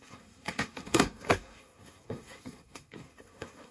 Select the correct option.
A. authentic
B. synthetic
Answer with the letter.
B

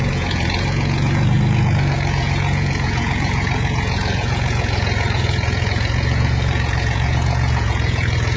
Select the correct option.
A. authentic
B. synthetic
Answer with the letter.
B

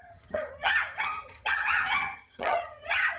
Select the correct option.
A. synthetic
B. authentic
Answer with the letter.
A